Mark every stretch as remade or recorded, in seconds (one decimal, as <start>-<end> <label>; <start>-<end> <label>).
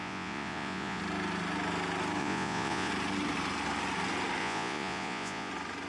0.0-1.0 remade; 1.0-2.2 recorded; 2.2-2.9 remade; 2.9-4.4 recorded; 4.4-5.5 remade; 5.5-5.9 recorded